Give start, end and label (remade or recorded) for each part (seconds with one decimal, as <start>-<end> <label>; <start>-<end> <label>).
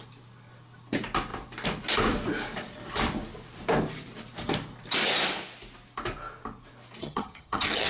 0.0-7.0 recorded; 7.0-7.9 remade